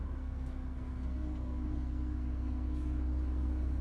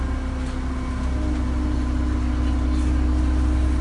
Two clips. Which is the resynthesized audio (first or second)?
first